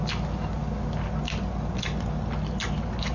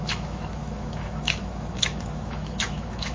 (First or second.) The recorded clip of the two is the first